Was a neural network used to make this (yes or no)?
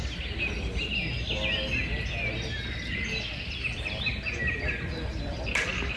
no